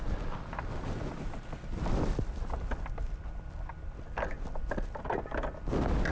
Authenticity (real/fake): real